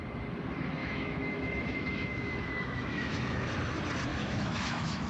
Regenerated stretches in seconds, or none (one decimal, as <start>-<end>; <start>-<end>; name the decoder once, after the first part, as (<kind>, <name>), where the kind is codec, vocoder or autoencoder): 0.8-3.5 (autoencoder, DAC-VAE); 4.1-5.1